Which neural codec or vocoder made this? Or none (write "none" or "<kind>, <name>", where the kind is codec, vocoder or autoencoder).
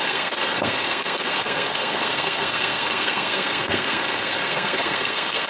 codec, SNAC